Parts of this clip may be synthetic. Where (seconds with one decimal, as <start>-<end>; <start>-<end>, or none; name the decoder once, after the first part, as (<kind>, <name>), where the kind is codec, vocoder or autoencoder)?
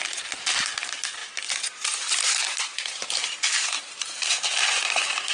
1.2-4.4 (vocoder, BigVGAN v2)